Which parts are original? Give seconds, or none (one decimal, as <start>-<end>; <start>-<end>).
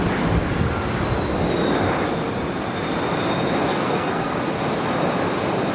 0.0-3.7; 4.3-5.7